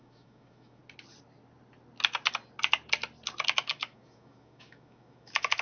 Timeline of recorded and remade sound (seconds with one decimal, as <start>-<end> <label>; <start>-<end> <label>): 0.0-0.8 remade; 0.8-3.7 recorded; 3.7-5.6 remade